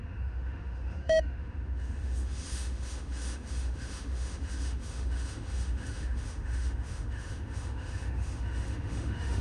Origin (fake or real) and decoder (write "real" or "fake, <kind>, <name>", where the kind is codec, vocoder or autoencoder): fake, autoencoder, DAC-VAE